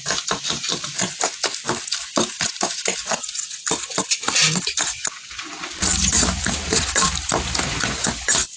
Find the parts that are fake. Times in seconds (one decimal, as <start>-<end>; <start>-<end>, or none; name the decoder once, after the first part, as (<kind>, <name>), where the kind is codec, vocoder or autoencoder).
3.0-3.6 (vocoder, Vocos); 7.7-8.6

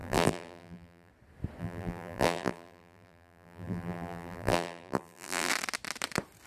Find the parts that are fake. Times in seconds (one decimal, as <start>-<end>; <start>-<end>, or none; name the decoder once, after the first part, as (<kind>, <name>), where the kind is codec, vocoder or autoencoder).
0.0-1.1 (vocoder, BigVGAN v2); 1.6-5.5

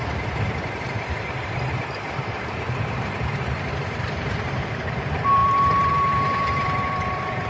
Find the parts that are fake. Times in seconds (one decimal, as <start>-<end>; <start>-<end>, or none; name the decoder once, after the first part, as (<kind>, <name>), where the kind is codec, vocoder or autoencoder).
0.0-7.5 (vocoder, BigVGAN v2)

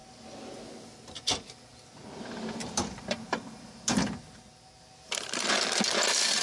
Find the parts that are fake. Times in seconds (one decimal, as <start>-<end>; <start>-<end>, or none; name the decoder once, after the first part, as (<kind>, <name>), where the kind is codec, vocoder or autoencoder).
1.7-5.5 (vocoder, BigVGAN v2)

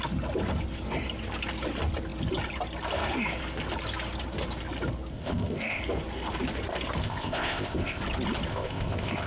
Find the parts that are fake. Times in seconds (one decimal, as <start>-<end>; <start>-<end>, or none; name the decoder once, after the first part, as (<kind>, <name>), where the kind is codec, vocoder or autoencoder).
5.1-5.8 (codec, ZipCodec); 7.0-8.0; 8.5-9.3

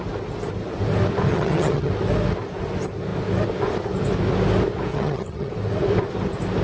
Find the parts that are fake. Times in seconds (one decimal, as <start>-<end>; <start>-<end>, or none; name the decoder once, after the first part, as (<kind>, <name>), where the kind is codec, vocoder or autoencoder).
1.3-1.9 (vocoder, HiFi-GAN); 4.9-5.5

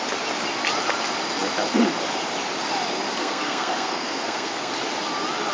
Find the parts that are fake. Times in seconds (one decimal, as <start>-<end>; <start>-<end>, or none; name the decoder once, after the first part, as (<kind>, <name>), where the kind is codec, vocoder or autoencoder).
3.2-4.7 (codec, SNAC)

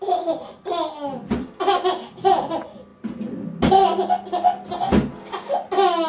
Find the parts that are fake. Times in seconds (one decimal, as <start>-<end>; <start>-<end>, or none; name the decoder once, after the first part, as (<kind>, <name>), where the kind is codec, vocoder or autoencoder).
none